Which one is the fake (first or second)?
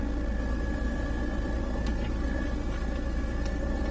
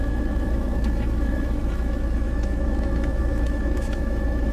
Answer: second